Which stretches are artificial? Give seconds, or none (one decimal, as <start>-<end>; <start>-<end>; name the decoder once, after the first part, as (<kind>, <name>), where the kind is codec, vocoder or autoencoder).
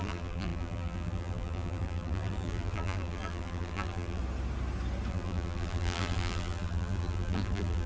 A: 0.0-4.2 (vocoder, BigVGAN v2); 5.1-7.9